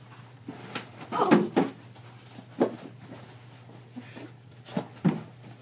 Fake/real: real